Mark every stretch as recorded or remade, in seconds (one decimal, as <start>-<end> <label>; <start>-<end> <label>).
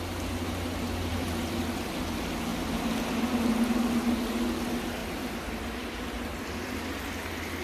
0.0-1.1 recorded; 1.1-2.0 remade; 2.0-5.0 recorded; 5.0-6.8 remade; 6.8-7.6 recorded